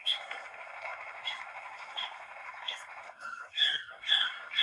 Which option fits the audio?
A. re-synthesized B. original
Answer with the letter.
A